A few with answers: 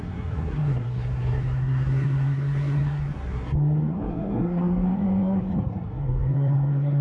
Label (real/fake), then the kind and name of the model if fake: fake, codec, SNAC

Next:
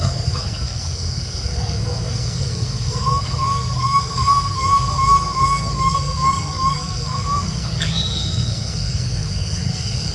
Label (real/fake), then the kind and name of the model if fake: fake, codec, SNAC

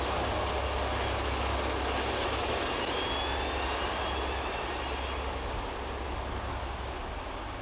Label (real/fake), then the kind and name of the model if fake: real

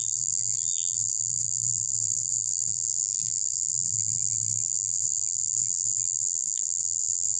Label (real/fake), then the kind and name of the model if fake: fake, vocoder, BigVGAN v2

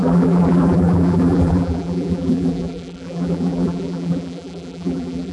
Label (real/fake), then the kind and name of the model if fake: fake, vocoder, BigVGAN v2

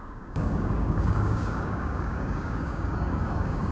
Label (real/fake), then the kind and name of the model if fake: fake, codec, DAC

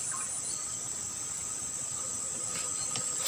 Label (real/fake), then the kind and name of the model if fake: real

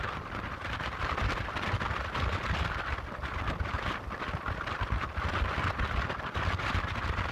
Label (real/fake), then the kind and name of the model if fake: real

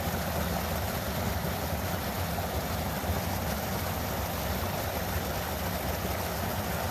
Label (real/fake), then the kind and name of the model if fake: real